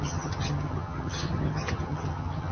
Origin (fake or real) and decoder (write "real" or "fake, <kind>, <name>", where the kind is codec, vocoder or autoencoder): fake, vocoder, HiFi-GAN